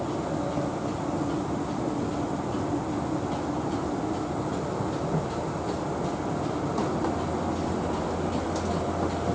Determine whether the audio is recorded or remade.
recorded